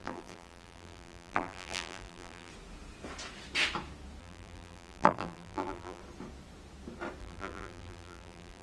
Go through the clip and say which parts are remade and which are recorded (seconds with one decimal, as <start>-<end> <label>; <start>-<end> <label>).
0.0-2.5 remade; 2.5-4.2 recorded; 4.2-6.0 remade; 6.0-7.2 recorded; 7.2-8.6 remade